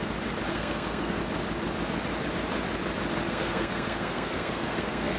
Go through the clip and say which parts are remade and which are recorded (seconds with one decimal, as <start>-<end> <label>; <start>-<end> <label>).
0.0-0.5 recorded; 0.5-1.2 remade; 1.2-3.3 recorded; 3.3-5.2 remade